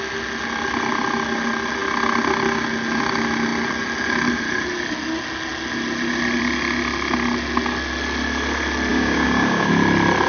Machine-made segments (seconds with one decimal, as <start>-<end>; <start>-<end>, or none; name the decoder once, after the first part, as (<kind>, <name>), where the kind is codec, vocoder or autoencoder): 8.9-9.7 (codec, DAC)